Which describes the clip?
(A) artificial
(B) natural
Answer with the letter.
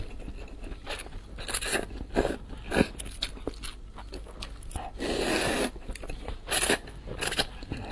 B